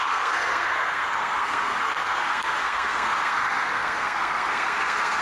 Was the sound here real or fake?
fake